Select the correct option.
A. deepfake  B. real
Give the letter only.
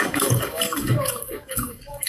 A